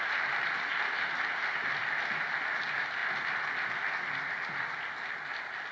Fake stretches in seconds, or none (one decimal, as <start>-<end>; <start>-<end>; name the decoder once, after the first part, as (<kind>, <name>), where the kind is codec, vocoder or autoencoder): none